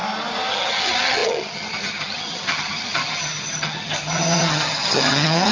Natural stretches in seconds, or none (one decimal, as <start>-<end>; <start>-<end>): 0.0-0.5